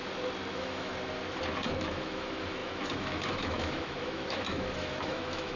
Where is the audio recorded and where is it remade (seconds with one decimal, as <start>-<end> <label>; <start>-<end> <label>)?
0.0-0.5 recorded; 0.5-0.9 remade; 0.9-1.9 recorded; 1.9-5.6 remade